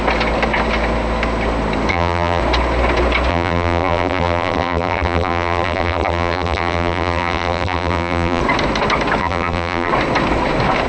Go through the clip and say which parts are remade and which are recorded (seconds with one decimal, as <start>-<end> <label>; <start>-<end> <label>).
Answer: 0.0-1.9 recorded; 1.9-2.4 remade; 2.4-3.3 recorded; 3.3-8.4 remade; 8.4-9.2 recorded; 9.2-9.9 remade; 9.9-10.9 recorded